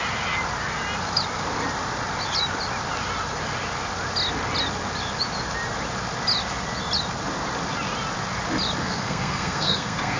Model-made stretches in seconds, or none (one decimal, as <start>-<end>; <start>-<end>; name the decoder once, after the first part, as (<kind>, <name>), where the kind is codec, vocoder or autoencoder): 8.8-10.2 (codec, SNAC)